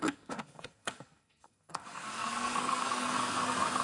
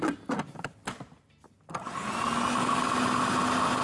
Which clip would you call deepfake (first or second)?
first